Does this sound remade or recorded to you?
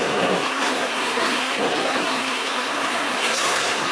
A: remade